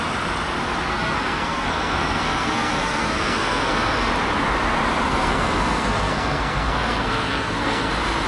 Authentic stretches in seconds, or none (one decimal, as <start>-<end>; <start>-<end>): 0.0-0.9; 4.1-5.1; 7.9-8.3